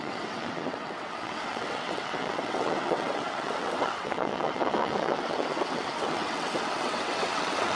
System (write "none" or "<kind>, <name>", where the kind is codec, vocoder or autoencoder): vocoder, WaveNeXt